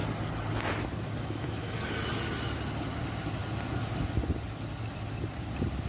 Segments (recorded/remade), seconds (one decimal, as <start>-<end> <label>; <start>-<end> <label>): 0.0-5.9 recorded